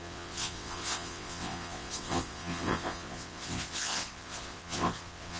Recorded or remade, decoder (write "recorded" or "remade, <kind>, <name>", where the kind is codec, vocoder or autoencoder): remade, vocoder, WaveNeXt